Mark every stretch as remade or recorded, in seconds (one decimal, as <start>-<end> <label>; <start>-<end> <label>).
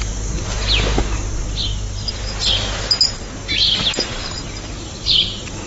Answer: 0.0-5.7 recorded